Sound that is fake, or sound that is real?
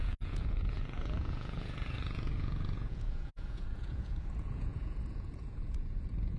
fake